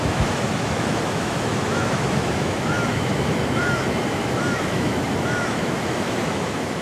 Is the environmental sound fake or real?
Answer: fake